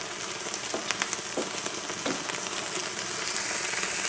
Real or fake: real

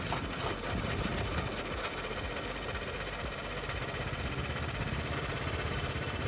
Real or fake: real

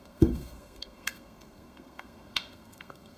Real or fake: fake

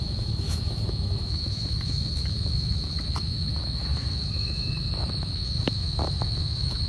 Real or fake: fake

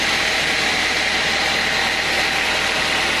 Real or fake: real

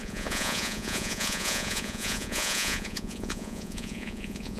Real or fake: fake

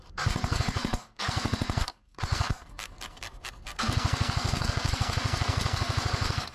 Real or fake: fake